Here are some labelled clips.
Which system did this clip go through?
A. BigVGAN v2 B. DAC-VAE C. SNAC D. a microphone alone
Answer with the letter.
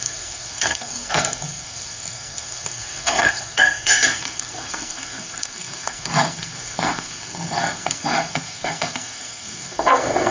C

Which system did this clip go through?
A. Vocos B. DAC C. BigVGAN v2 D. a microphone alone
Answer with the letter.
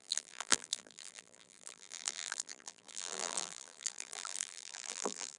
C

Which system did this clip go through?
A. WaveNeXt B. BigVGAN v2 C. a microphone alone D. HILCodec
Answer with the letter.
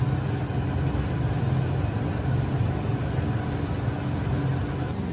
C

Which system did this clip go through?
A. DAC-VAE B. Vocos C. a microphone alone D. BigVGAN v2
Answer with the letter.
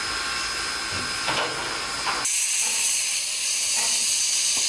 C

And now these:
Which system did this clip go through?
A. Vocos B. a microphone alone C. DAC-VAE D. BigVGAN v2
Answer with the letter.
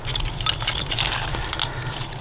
B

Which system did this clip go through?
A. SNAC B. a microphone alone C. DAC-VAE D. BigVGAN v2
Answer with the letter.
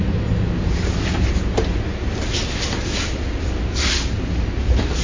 B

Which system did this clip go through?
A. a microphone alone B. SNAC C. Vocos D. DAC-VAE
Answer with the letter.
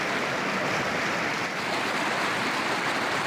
A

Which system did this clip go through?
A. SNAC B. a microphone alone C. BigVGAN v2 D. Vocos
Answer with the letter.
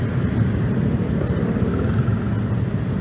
B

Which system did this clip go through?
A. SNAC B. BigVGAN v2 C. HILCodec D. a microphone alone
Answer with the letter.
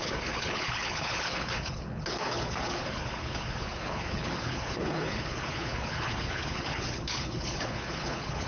C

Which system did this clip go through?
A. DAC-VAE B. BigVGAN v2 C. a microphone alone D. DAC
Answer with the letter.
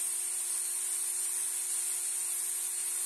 C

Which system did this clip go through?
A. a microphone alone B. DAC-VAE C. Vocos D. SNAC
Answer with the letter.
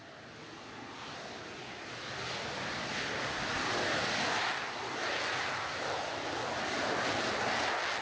A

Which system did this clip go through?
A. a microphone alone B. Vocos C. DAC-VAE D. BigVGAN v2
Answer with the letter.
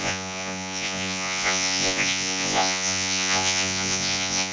B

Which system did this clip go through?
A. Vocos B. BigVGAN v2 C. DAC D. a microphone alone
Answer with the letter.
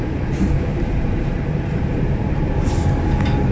B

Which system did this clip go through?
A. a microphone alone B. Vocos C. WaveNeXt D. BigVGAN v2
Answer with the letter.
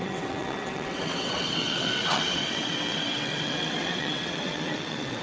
C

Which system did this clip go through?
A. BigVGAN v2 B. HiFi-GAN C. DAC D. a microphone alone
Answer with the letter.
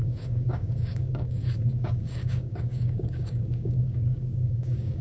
C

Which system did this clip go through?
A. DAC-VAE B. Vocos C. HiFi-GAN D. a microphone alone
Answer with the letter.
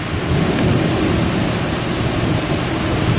D